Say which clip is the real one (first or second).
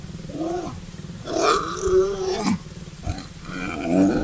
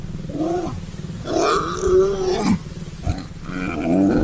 second